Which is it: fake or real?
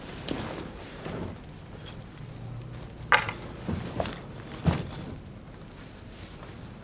real